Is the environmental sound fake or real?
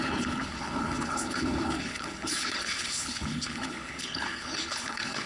fake